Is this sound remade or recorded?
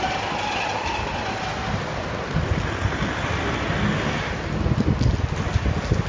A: recorded